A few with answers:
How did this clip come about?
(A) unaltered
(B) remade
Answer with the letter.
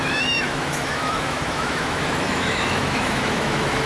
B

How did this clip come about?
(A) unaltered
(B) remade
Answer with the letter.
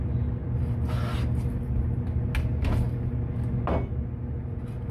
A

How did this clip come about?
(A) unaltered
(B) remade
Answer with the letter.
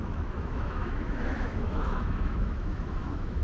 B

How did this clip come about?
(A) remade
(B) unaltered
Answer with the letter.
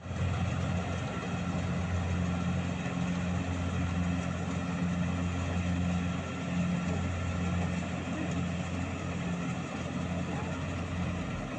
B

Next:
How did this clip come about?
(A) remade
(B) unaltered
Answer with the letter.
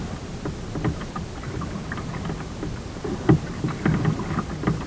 B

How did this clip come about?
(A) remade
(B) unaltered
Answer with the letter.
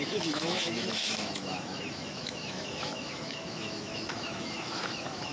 A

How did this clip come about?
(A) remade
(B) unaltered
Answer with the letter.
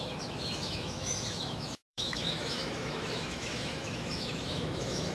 A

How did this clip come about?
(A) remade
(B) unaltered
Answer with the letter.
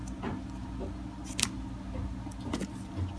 B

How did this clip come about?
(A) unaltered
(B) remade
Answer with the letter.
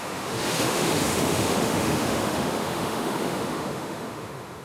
B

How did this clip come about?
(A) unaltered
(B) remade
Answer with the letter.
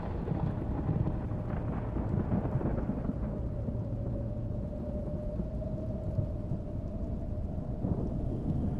A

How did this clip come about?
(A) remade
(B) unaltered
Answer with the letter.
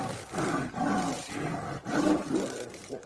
B